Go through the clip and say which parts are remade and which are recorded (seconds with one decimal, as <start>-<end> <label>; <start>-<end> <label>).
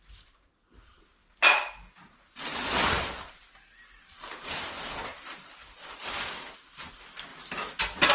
0.0-5.1 recorded; 5.1-6.0 remade; 6.0-8.1 recorded